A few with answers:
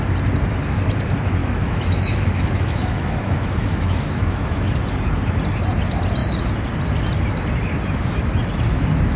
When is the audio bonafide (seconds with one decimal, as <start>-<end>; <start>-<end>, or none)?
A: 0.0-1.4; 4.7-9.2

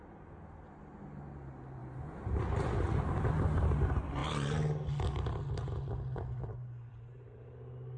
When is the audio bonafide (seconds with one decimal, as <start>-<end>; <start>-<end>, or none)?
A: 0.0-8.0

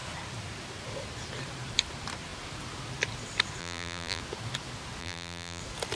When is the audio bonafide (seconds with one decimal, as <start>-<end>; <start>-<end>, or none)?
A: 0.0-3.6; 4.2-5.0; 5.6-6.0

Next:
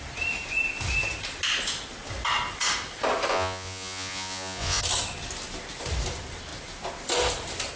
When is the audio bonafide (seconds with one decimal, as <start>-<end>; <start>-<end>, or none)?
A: 0.0-3.3; 4.8-7.8

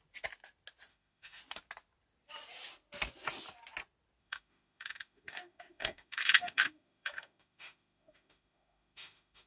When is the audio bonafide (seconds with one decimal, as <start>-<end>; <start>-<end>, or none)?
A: 0.0-0.9; 1.4-4.2

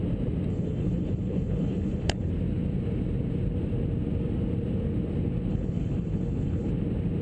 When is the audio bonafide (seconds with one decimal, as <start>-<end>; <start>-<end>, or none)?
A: 0.0-0.5; 2.3-5.5; 6.7-7.2

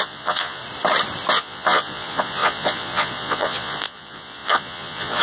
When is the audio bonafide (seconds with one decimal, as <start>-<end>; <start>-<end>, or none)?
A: 0.6-1.3